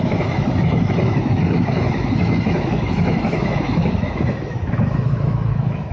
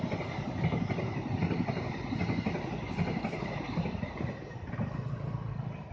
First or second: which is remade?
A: first